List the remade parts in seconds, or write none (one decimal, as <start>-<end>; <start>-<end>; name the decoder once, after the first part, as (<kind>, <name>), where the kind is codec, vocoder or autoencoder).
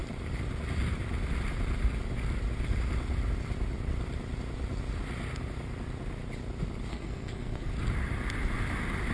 6.9-7.7 (codec, SNAC)